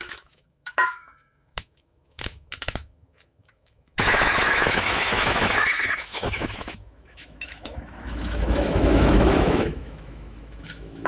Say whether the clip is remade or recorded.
remade